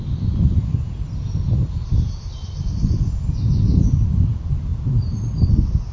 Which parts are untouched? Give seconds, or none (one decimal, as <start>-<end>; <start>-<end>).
0.0-5.9